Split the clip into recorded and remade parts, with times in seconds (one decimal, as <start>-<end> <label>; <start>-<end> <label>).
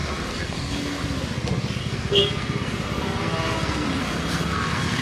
0.0-1.0 remade; 1.0-1.8 recorded; 1.8-5.0 remade